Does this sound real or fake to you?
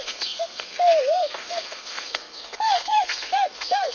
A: fake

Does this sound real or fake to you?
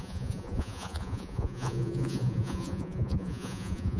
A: fake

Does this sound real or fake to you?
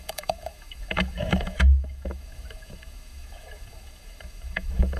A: fake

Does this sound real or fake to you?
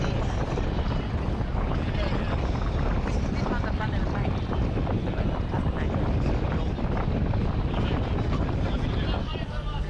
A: real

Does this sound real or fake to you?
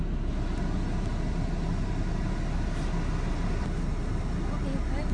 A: real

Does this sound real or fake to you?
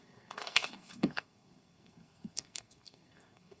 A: fake